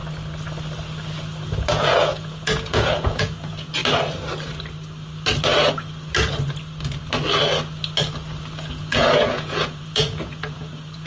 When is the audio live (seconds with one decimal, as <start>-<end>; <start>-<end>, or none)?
0.0-1.7; 3.8-8.7